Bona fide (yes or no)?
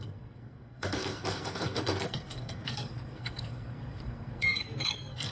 no